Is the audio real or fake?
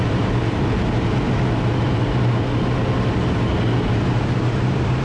real